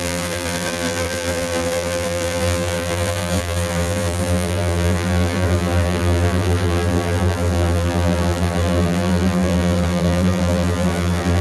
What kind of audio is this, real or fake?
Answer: fake